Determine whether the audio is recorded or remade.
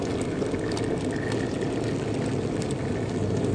recorded